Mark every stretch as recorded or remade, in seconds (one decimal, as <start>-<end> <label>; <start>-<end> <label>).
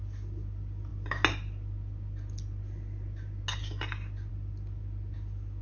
0.0-5.6 recorded